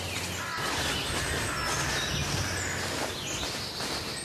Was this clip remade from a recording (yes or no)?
no